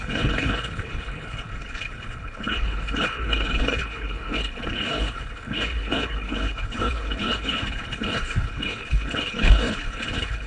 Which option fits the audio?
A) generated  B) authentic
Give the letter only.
A